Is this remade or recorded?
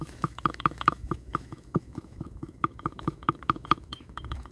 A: remade